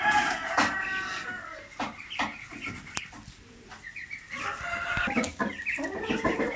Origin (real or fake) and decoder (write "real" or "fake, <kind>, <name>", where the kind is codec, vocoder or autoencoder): real